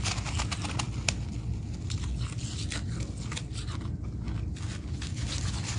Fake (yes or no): no